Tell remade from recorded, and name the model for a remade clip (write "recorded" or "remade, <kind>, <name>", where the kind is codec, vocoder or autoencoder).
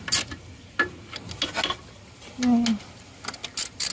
recorded